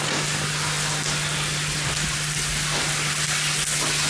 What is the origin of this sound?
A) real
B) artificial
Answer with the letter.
A